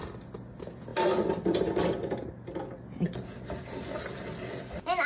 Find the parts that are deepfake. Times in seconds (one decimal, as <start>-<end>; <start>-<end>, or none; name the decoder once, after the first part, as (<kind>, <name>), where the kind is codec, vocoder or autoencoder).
none